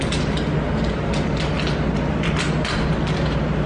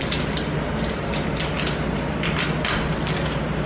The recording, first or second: first